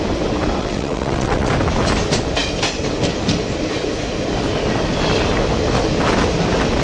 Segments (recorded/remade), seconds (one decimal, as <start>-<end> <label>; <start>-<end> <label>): 0.0-0.6 recorded; 0.6-1.5 remade; 1.5-6.8 recorded